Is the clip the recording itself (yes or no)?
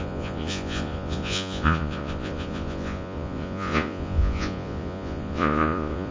no